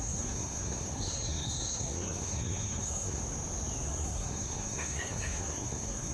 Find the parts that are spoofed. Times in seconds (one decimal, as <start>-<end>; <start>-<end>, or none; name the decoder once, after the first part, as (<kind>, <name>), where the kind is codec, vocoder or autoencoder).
0.0-3.2 (codec, SNAC); 3.9-6.1